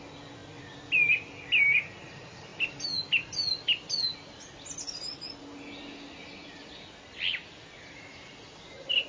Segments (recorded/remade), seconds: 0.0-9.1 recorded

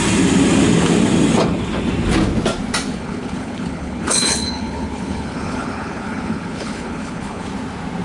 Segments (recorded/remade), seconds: 0.0-2.9 recorded; 2.9-7.5 remade; 7.5-8.0 recorded

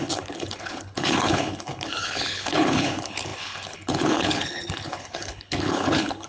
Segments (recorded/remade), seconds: 0.0-6.3 remade

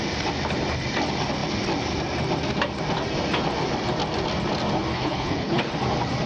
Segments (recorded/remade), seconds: 0.0-4.9 recorded; 4.9-5.6 remade; 5.6-6.3 recorded

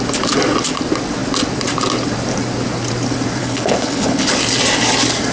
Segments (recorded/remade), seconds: 0.0-3.4 recorded; 3.4-4.3 remade; 4.3-5.3 recorded